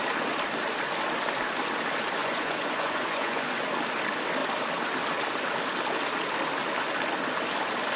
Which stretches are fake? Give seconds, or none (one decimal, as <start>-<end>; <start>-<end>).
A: 2.2-3.5